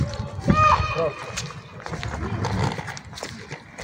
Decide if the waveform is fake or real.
real